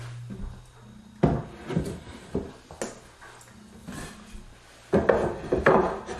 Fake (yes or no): no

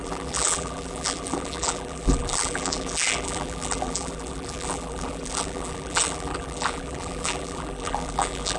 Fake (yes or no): yes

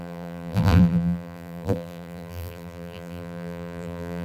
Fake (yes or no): yes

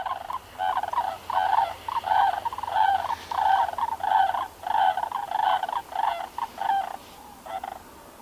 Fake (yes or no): no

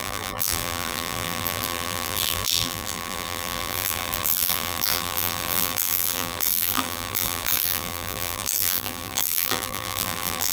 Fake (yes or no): yes